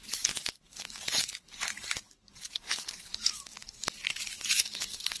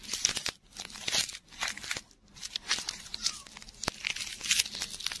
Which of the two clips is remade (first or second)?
first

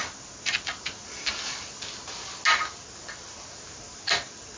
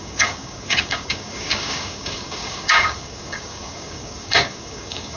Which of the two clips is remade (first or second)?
second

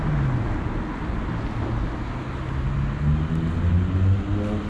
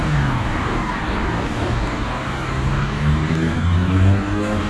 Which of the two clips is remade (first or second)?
second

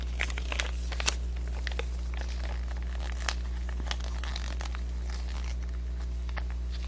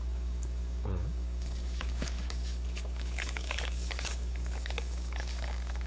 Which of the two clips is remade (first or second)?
second